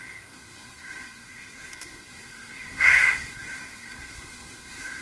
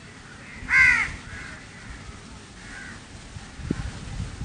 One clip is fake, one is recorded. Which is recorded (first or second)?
second